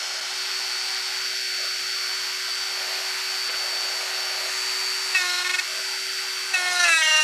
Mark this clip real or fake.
real